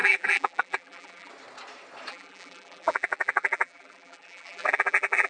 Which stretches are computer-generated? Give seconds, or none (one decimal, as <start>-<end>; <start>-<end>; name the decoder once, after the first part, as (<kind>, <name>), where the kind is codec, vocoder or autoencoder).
0.0-1.3 (vocoder, BigVGAN v2); 2.1-5.3